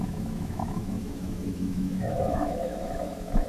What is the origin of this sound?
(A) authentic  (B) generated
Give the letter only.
B